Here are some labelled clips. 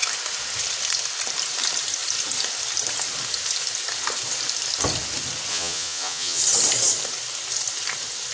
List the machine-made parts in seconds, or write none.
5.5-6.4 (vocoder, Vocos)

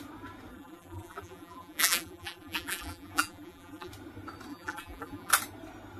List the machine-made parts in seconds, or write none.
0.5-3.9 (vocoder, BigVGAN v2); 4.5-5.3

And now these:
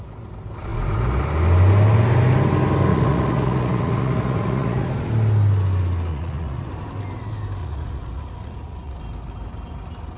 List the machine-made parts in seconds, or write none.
2.9-4.9 (vocoder, Vocos); 6.1-6.7; 7.6-9.0

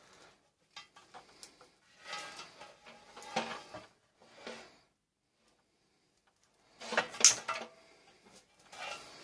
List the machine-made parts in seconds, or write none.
none

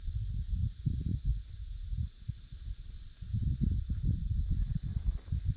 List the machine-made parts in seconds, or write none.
none